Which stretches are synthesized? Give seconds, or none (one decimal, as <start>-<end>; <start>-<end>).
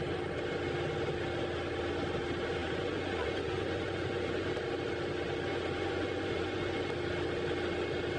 2.6-4.5; 5.5-6.8